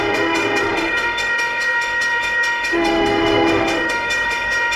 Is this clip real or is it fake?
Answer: fake